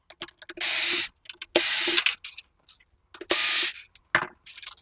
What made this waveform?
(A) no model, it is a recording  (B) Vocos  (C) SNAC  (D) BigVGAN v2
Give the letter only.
A